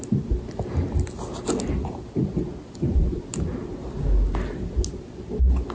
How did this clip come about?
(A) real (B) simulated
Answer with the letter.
A